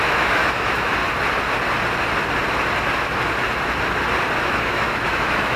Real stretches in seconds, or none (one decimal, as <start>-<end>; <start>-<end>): 1.0-4.4